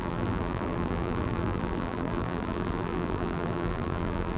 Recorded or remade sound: remade